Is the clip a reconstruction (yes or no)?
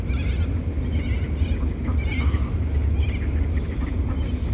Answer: no